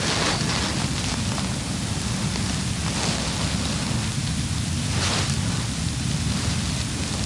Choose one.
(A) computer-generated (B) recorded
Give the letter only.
B